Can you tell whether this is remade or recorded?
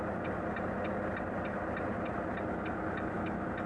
recorded